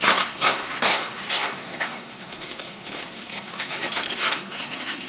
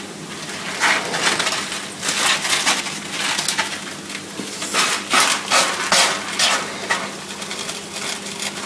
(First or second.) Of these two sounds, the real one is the second